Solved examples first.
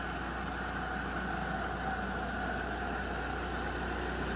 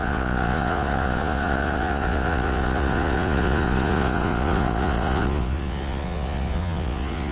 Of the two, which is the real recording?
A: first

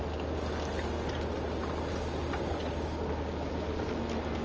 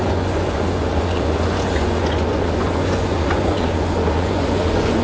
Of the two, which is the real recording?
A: first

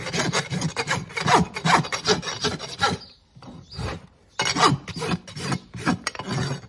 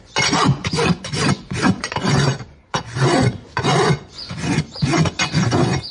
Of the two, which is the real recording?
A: first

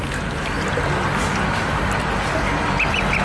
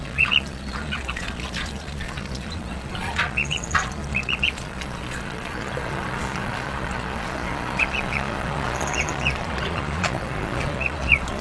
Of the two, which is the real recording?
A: first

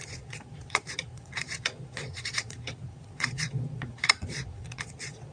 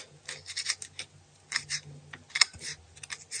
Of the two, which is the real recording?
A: second